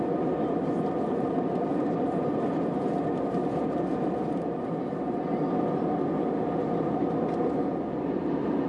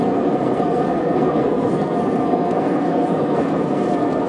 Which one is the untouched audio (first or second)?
first